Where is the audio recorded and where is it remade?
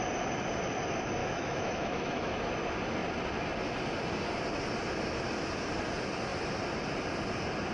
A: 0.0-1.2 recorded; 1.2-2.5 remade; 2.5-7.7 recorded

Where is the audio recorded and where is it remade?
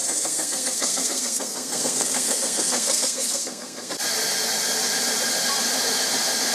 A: 0.0-3.9 remade; 3.9-6.5 recorded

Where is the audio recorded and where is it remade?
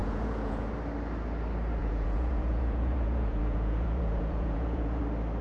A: 0.0-0.7 remade; 0.7-1.8 recorded; 1.8-5.0 remade; 5.0-5.4 recorded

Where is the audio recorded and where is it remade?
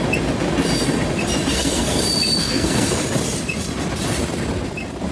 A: 0.0-1.5 recorded; 1.5-2.0 remade; 2.0-2.4 recorded; 2.4-2.9 remade; 2.9-5.1 recorded